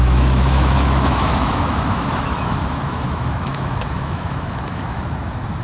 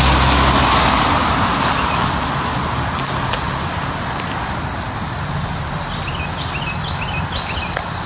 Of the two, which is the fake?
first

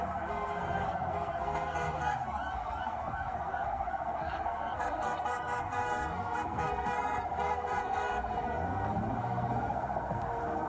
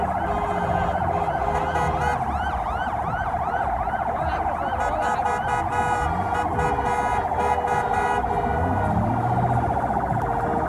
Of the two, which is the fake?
first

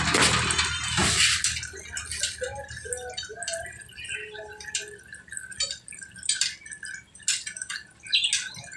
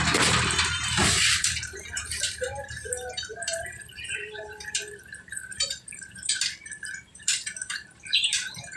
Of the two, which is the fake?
second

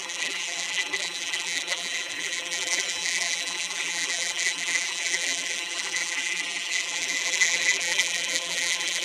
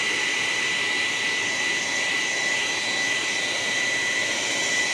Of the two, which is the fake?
first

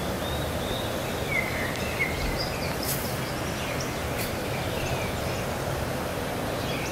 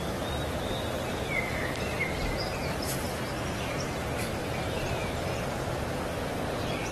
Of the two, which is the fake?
second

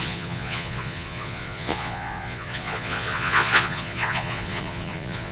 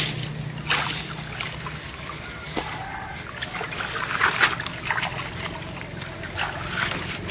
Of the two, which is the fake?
first